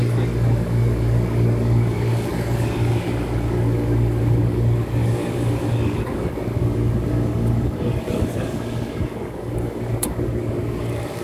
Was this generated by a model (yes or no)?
yes